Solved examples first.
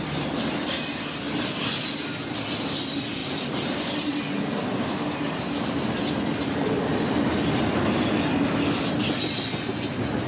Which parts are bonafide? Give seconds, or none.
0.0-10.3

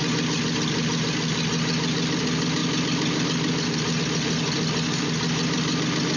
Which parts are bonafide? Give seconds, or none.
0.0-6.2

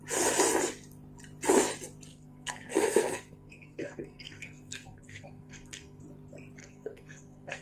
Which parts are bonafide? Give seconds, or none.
0.0-2.1; 6.0-6.6

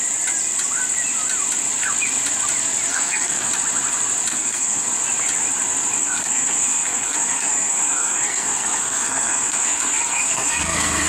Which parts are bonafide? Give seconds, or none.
0.0-2.9; 3.5-4.3; 4.9-6.0

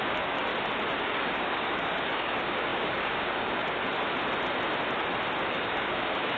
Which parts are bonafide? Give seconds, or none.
0.5-1.0; 3.8-5.5